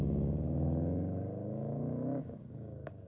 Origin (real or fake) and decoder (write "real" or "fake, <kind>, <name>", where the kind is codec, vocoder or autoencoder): fake, codec, DAC